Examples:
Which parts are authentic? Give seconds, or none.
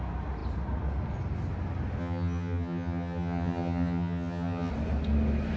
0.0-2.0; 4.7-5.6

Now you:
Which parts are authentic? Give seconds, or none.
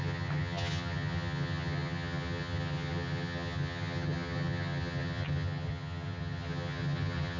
none